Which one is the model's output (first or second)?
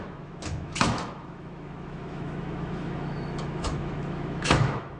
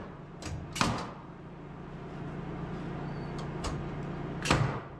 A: first